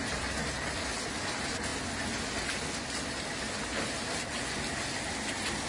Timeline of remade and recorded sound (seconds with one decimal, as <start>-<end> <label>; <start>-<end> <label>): 0.0-5.7 recorded